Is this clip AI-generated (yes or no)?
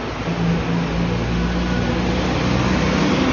no